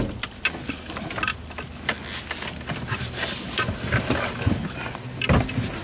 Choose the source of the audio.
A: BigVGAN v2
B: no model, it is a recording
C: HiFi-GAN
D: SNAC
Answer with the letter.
B